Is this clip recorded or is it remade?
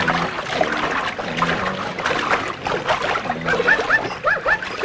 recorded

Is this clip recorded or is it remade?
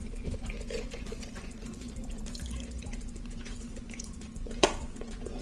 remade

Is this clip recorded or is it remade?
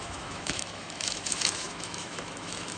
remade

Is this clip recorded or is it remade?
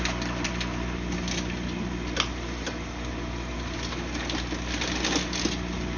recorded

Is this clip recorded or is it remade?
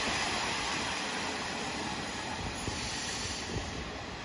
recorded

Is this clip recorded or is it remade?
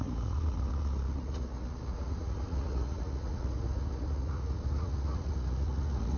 remade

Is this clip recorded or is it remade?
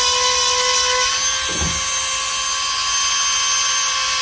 recorded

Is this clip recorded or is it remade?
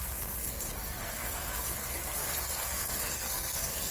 remade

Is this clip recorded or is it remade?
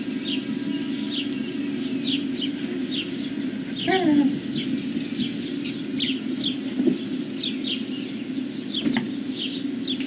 recorded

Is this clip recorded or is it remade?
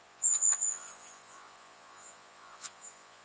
remade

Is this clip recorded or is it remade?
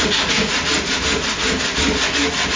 recorded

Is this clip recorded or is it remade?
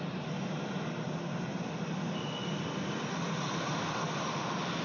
recorded